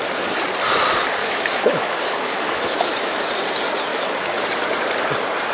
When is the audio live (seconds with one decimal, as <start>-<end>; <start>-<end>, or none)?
0.0-1.2; 3.3-3.9; 4.5-5.5